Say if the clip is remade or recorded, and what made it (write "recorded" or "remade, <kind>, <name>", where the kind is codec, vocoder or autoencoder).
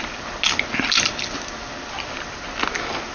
recorded